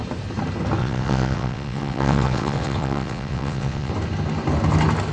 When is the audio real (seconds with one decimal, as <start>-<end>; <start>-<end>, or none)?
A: 0.0-0.8; 3.9-5.1